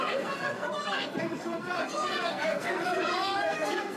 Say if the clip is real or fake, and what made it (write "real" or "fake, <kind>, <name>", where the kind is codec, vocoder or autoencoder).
fake, codec, SNAC